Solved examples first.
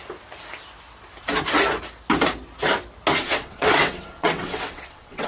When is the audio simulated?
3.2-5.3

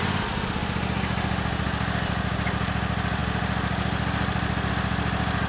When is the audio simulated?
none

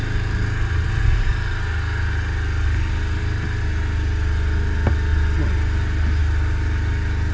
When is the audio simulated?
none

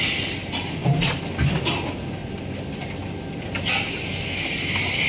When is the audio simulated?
none